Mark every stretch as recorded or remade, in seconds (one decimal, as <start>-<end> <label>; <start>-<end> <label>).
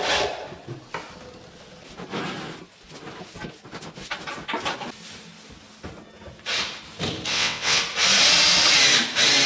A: 0.0-7.3 recorded; 7.3-7.8 remade; 7.8-9.5 recorded